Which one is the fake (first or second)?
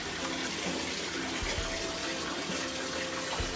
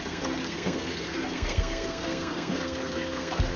second